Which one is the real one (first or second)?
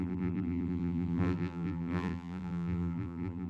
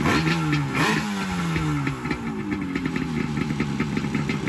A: second